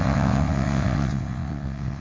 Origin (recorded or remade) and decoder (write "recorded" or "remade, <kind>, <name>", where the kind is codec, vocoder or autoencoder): remade, vocoder, WaveNeXt